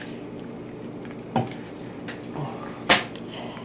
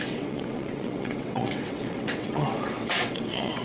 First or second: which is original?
first